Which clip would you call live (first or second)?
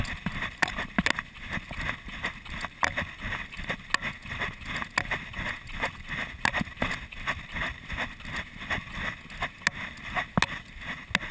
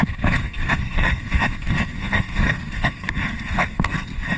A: first